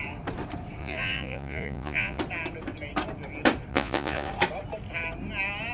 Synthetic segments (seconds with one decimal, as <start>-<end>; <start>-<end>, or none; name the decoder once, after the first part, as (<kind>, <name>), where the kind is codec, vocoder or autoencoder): 0.8-2.2 (vocoder, Vocos); 3.7-4.3